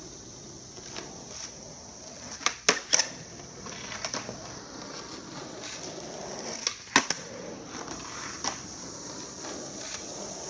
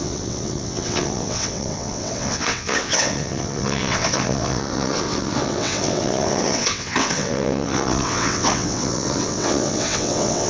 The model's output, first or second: second